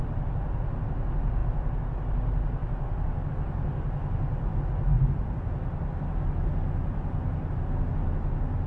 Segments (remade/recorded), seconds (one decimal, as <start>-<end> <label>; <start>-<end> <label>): 0.0-8.7 recorded